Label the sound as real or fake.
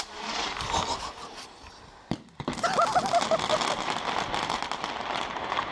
real